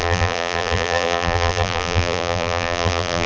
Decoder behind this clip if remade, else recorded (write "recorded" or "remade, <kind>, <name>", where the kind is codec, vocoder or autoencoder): remade, vocoder, BigVGAN v2